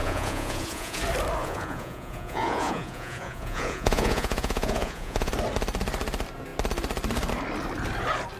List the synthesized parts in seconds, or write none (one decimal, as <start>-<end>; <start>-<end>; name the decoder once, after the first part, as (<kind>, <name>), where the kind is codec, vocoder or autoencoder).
0.0-1.0 (vocoder, Vocos); 1.4-5.3